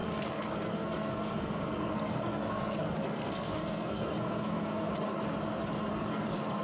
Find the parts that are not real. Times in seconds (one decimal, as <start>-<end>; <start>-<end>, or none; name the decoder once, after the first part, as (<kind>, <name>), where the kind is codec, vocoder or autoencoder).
0.0-4.9 (codec, SNAC); 5.9-6.6